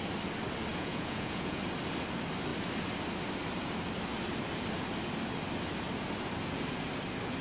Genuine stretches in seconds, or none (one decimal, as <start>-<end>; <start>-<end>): 0.0-0.7; 1.6-7.4